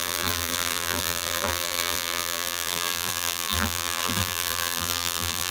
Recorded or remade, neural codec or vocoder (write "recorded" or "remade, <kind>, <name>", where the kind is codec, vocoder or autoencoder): remade, vocoder, BigVGAN v2